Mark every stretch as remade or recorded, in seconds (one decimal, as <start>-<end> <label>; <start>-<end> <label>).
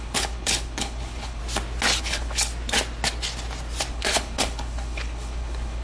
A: 0.0-1.4 remade; 1.4-2.0 recorded; 2.0-2.5 remade; 2.5-3.9 recorded; 3.9-5.8 remade